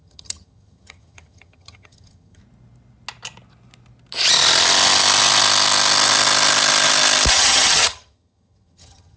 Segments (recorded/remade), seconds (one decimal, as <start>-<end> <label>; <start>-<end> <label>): 0.0-2.4 remade; 2.4-7.3 recorded; 7.3-9.2 remade